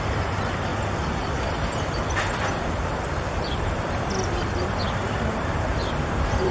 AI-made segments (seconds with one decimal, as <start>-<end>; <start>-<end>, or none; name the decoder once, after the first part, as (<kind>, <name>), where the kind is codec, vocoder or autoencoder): 0.0-0.7 (vocoder, BigVGAN v2); 2.6-6.5